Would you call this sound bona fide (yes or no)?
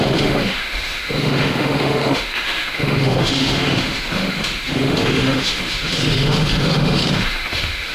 no